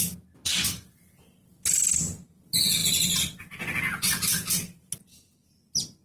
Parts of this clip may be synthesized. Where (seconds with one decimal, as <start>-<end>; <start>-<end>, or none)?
0.5-1.5; 2.8-3.4